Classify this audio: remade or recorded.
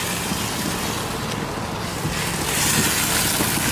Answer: recorded